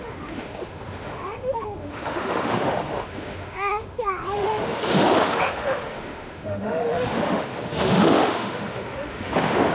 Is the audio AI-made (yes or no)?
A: yes